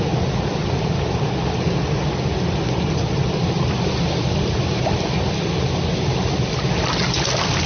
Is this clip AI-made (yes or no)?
no